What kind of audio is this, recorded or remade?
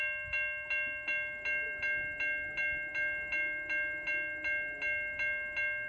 recorded